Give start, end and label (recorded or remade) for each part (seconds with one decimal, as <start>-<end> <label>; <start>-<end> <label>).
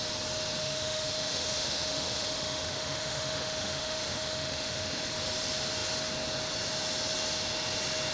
0.0-0.6 recorded; 0.6-5.0 remade; 5.0-8.1 recorded